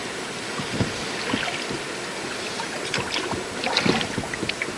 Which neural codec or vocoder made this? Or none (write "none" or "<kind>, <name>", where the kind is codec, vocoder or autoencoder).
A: none